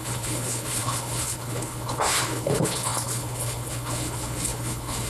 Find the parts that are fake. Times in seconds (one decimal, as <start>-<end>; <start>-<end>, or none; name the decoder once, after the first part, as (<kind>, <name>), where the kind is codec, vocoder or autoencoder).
0.0-5.1 (codec, HILCodec)